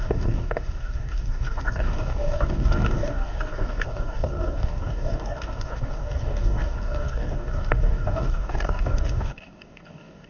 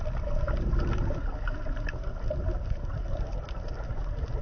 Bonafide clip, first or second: second